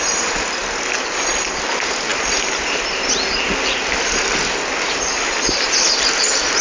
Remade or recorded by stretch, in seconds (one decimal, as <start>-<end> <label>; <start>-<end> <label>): 0.0-6.6 recorded